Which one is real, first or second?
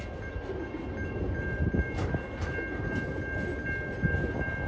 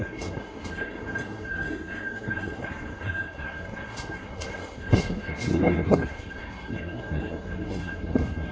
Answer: first